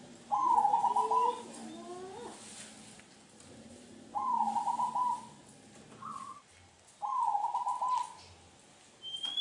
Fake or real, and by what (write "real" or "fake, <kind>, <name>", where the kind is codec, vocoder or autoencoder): real